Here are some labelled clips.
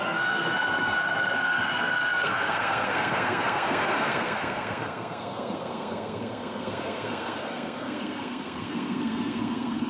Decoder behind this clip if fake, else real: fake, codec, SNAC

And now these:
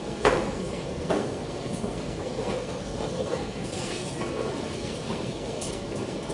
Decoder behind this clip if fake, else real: fake, codec, SNAC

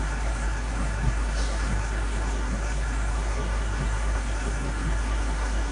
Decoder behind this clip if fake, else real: fake, codec, SNAC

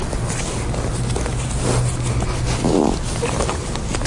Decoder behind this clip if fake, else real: real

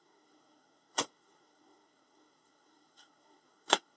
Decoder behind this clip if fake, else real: fake, codec, SNAC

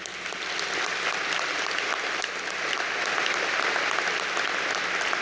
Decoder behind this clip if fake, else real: real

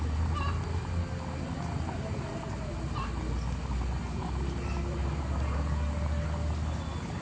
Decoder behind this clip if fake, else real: real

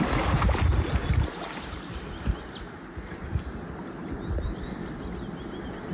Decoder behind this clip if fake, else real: real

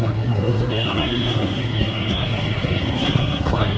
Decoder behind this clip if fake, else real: fake, codec, SNAC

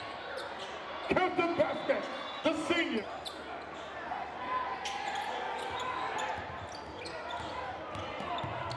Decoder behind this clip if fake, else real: real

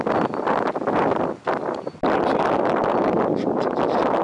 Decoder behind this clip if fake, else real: real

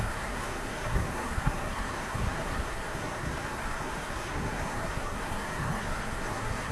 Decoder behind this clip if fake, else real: fake, codec, SNAC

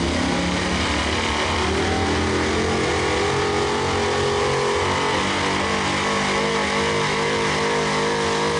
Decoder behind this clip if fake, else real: real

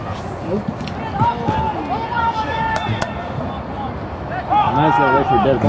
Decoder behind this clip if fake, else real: real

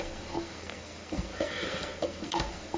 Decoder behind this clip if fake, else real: fake, codec, SNAC